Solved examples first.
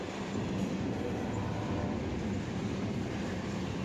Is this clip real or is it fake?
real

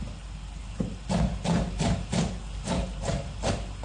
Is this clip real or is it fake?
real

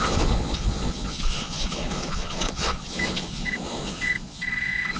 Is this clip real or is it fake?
fake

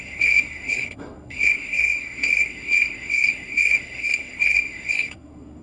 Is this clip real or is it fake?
fake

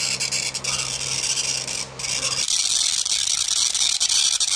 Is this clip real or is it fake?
real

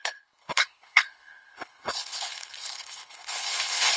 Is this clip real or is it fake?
fake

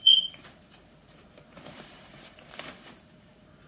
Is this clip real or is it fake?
fake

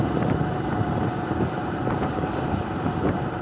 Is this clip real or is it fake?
fake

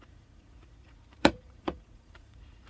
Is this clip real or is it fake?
fake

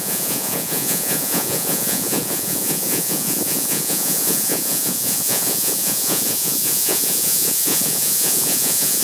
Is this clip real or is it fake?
fake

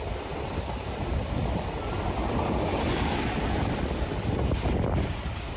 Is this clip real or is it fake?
real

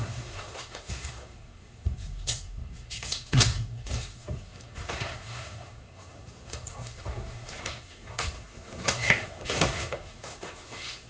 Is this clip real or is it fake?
fake